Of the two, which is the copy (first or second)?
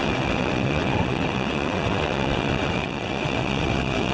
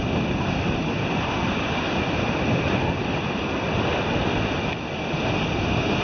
first